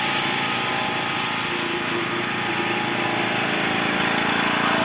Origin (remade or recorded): recorded